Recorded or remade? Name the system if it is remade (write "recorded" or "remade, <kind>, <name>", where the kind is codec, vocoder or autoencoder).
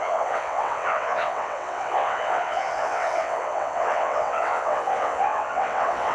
remade, vocoder, WaveNeXt